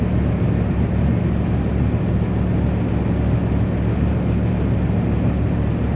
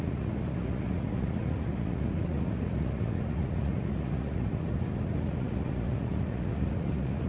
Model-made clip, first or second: second